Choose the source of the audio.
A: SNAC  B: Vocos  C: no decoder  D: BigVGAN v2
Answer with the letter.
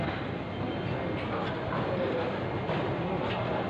C